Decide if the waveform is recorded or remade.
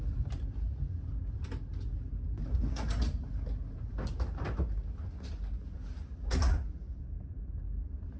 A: recorded